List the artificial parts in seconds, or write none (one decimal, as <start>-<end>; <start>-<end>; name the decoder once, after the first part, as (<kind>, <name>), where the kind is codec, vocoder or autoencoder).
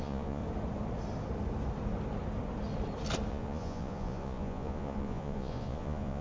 0.0-0.4 (vocoder, Vocos); 3.3-6.2